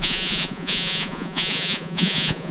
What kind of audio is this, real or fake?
fake